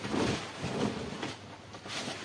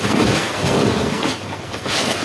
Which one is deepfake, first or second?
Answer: second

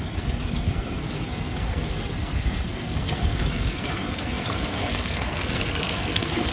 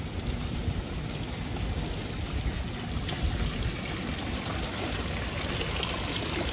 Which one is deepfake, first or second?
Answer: first